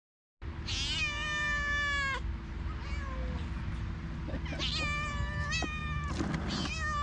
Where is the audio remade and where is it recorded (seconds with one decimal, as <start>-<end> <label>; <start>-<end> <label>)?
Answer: 0.0-7.0 recorded